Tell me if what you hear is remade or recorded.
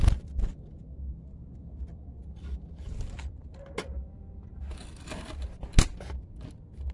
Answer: recorded